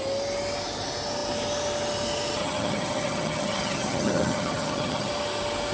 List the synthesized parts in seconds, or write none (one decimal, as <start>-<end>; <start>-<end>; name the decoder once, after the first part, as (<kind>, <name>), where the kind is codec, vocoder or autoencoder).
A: 2.4-5.1 (vocoder, HiFi-GAN)

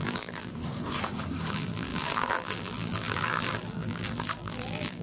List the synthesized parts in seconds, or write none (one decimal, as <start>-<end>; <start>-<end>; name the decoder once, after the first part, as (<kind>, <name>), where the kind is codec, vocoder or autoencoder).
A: 0.0-0.5 (vocoder, BigVGAN v2); 1.5-5.0

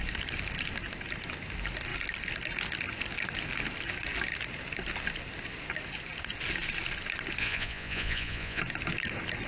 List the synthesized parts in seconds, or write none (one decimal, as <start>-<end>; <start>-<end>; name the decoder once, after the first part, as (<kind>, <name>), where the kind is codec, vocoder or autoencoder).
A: 7.4-8.6 (vocoder, Vocos)